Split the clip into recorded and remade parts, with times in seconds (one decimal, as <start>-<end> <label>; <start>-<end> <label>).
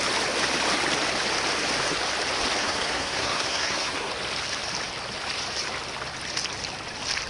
0.0-2.6 recorded; 2.6-4.1 remade; 4.1-7.3 recorded